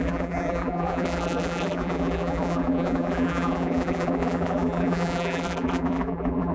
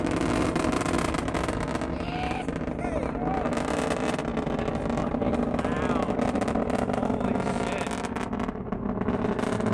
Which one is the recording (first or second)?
second